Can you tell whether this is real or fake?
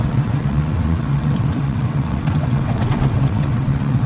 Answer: fake